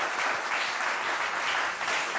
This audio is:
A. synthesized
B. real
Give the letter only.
B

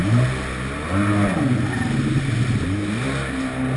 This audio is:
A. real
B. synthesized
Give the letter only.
A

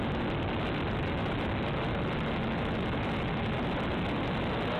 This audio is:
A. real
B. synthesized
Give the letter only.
A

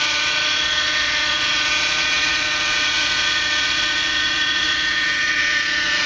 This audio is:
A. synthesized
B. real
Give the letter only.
A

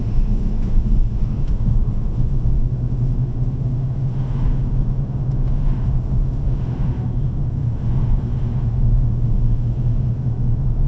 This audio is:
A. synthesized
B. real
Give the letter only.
A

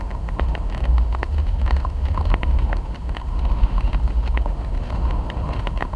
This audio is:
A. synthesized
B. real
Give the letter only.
A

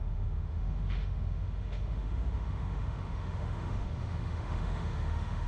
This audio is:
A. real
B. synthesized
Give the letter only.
B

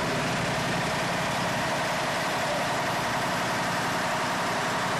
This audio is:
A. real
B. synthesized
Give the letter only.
B